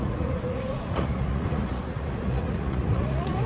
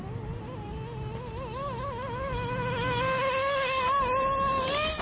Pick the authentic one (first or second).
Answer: second